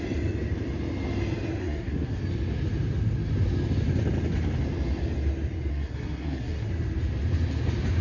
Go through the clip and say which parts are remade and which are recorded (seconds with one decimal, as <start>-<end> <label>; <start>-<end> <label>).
0.0-1.6 recorded; 1.6-2.2 remade; 2.2-5.7 recorded; 5.7-6.7 remade; 6.7-8.0 recorded